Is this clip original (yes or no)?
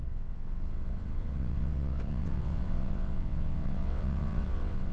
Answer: no